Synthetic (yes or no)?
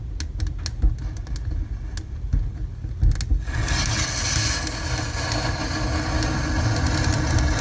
no